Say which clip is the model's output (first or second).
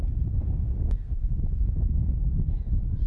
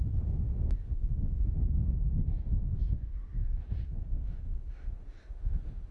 second